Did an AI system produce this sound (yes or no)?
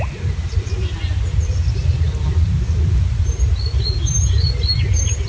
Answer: no